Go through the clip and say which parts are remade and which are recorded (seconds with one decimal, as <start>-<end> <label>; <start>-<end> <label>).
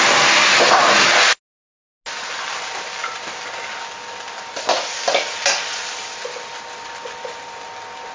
0.0-8.1 recorded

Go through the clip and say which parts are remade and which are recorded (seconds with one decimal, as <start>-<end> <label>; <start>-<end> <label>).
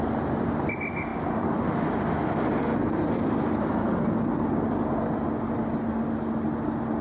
0.0-7.0 recorded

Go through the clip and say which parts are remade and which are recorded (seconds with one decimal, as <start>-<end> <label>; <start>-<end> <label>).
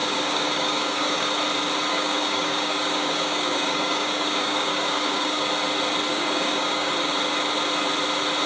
0.0-1.3 remade; 1.3-1.9 recorded; 1.9-5.5 remade; 5.5-6.1 recorded; 6.1-6.9 remade; 6.9-8.5 recorded